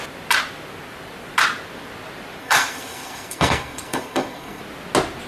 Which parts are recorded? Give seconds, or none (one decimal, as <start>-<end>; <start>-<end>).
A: 0.0-2.4; 4.6-5.3